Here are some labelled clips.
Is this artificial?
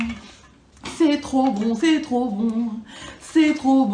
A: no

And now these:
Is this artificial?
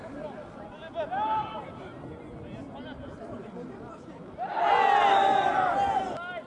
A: no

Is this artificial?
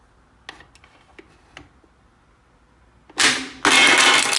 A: no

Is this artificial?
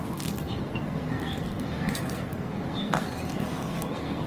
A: yes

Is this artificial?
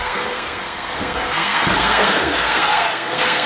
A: yes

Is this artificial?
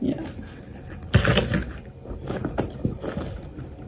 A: no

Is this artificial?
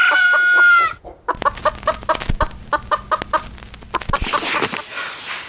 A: no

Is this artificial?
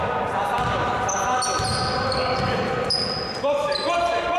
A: no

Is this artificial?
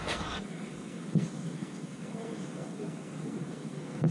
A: yes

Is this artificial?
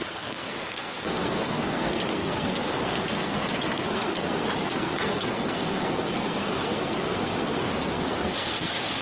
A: yes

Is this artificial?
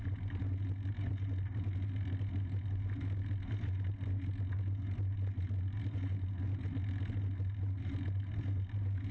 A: no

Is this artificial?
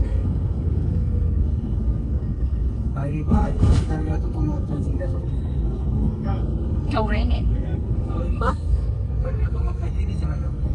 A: yes